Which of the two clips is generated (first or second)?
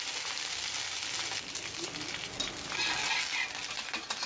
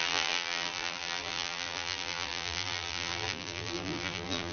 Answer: second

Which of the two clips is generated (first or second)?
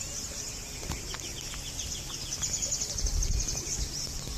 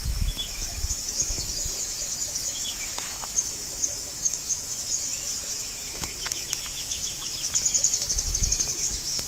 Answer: second